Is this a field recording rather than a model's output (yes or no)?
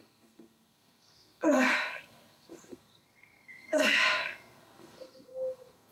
no